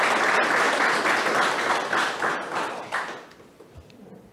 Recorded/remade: recorded